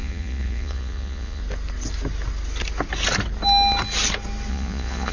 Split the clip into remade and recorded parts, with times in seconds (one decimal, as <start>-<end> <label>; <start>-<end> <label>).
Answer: 0.0-1.4 remade; 1.4-4.5 recorded; 4.5-5.1 remade